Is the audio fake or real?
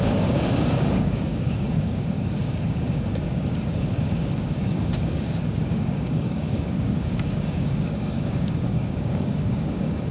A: fake